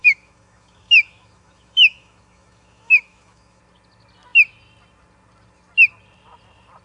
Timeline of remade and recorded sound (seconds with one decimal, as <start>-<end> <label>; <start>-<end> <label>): 0.0-3.6 remade; 3.6-6.8 recorded

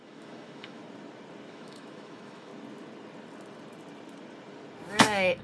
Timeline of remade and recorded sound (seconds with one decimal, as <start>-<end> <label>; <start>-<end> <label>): 0.0-0.8 remade; 0.8-1.5 recorded; 1.5-2.5 remade; 2.5-4.9 recorded; 4.9-5.4 remade

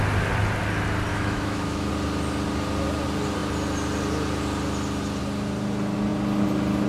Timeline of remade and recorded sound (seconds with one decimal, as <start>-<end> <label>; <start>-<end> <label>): 0.0-1.1 recorded; 1.1-1.9 remade; 1.9-6.9 recorded

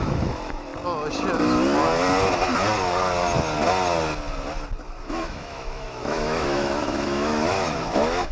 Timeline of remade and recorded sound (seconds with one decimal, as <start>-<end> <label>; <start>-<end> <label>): 0.0-0.7 remade; 0.7-5.0 recorded; 5.0-8.3 remade

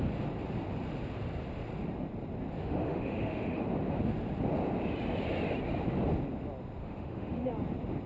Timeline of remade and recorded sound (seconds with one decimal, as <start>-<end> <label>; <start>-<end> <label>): 0.0-2.6 recorded; 2.6-3.6 remade; 3.6-6.8 recorded; 6.8-7.5 remade; 7.5-8.1 recorded